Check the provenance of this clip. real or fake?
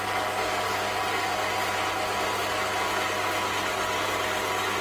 real